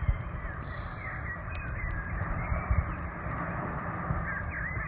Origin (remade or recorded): remade